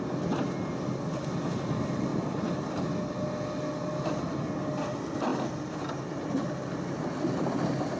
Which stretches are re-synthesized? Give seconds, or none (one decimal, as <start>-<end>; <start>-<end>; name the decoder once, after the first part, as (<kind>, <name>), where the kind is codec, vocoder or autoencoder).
none